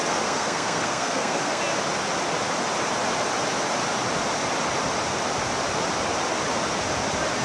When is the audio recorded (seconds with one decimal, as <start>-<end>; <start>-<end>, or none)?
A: 1.6-7.4